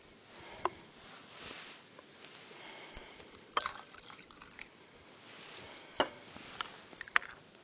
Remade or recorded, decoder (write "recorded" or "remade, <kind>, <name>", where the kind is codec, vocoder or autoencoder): recorded